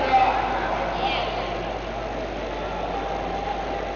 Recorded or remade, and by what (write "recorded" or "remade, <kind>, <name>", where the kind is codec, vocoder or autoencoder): recorded